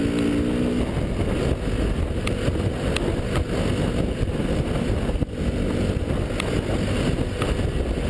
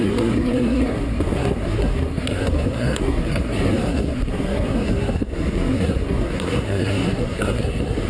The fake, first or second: second